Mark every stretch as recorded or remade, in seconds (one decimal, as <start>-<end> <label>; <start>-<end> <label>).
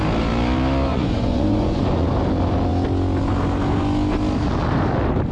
0.0-0.9 recorded; 0.9-2.1 remade; 2.1-5.3 recorded